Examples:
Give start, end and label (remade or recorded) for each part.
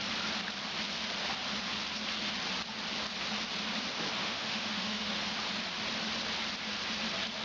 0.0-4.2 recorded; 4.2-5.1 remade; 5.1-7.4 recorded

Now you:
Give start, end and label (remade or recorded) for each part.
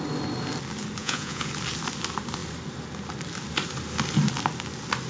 0.0-1.0 recorded; 1.0-1.5 remade; 1.5-5.1 recorded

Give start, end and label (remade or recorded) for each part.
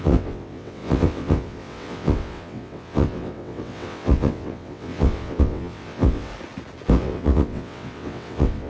0.0-6.3 remade; 6.3-6.9 recorded; 6.9-8.7 remade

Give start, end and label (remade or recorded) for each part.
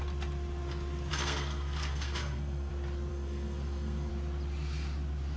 0.0-1.1 recorded; 1.1-2.7 remade; 2.7-3.1 recorded; 3.1-4.1 remade; 4.1-5.4 recorded